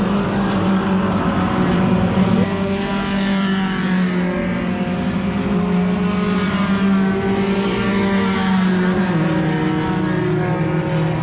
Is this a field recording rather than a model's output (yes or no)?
yes